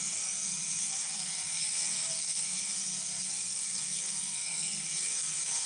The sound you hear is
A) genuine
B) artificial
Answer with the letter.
B